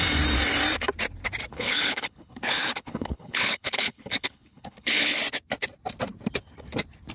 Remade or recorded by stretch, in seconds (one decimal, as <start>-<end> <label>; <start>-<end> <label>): 0.0-1.5 recorded; 1.5-5.2 remade; 5.2-7.1 recorded